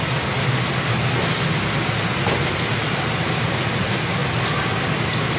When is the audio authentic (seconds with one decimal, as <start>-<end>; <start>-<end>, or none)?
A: 0.0-2.8; 3.6-5.4